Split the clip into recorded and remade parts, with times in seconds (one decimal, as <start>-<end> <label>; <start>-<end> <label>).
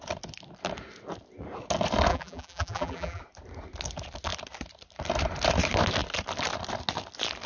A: 0.0-2.1 recorded; 2.1-3.2 remade; 3.2-7.5 recorded